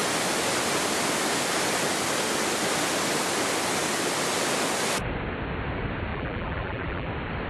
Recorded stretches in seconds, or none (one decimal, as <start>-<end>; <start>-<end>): 0.0-6.1; 7.1-7.5